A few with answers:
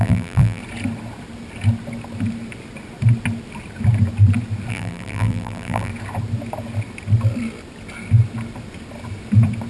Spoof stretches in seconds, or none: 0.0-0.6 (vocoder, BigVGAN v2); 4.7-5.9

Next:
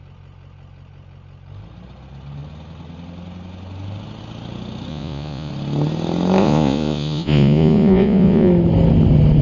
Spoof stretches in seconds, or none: 4.9-5.5 (vocoder, Vocos); 6.4-8.5

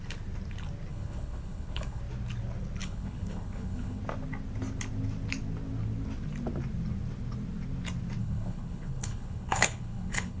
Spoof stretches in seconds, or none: 0.9-2.0 (codec, HILCodec); 2.8-4.0; 8.2-10.4

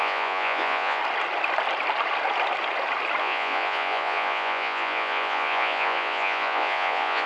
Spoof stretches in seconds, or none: 0.0-1.0 (vocoder, Vocos); 3.2-7.3